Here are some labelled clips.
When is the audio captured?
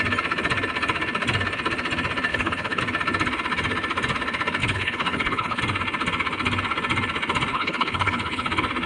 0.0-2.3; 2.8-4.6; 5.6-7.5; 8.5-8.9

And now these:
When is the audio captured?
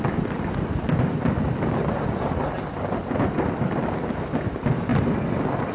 0.0-5.7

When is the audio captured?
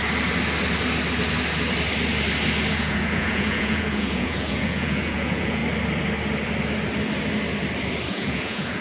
0.0-2.7; 5.6-8.1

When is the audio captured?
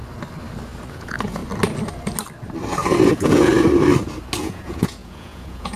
0.0-0.9; 1.4-3.1; 3.5-4.4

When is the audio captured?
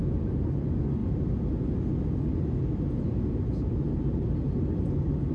0.0-5.3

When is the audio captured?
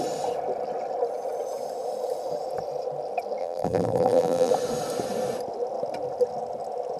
0.0-3.4; 4.5-7.0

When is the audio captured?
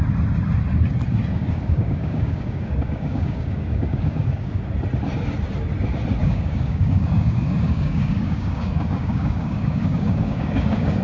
0.0-1.3; 4.6-6.2